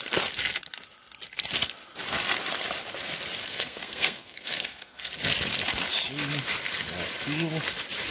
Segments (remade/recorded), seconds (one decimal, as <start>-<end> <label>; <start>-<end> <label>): 0.0-3.4 recorded; 3.4-5.1 remade; 5.1-8.1 recorded